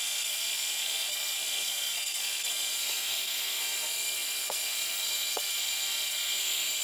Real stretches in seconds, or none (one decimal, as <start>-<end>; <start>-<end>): none